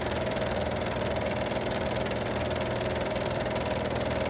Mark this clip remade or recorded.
recorded